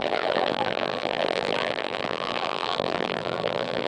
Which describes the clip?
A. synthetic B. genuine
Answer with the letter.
A